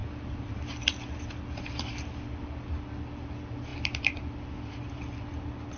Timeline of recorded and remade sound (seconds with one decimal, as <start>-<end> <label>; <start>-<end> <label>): 0.0-5.8 recorded